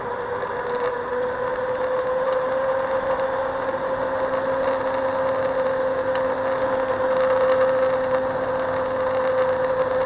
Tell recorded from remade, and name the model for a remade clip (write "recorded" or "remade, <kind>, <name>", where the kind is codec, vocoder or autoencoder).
recorded